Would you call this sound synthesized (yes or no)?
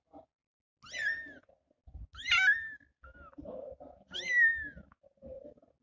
no